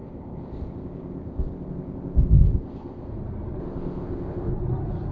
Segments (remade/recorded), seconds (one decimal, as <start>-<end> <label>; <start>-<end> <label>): 0.0-3.1 remade; 3.1-3.6 recorded; 3.6-4.5 remade; 4.5-5.1 recorded